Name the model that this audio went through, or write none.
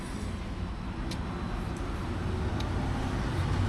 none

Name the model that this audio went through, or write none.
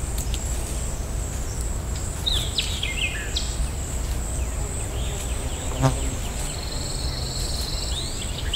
none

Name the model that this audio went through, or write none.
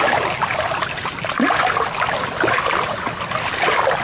none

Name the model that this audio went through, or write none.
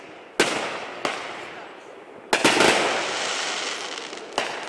none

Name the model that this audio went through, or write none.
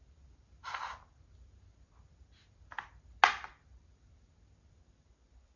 none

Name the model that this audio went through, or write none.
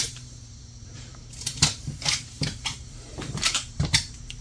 vocoder, BigVGAN v2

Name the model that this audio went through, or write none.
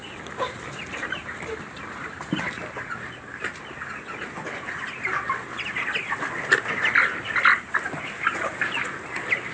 none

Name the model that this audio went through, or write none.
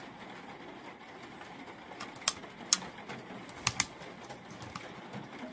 none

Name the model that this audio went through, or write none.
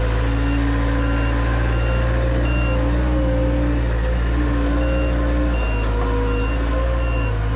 none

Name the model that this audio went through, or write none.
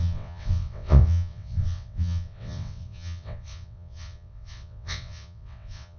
vocoder, WaveNeXt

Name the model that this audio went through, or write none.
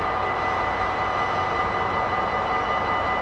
none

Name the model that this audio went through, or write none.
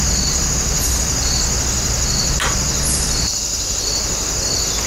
none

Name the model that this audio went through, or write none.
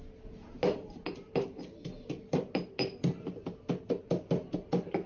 none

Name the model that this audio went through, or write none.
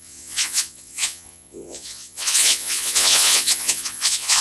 vocoder, Vocos